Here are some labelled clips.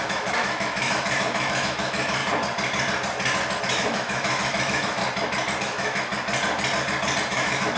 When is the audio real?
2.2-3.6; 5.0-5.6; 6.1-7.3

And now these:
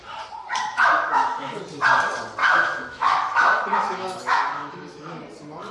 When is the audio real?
0.0-0.6; 1.6-2.4; 5.2-5.7